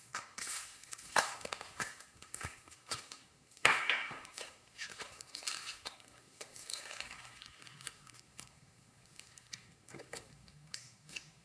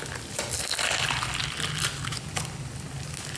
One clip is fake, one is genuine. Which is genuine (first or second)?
second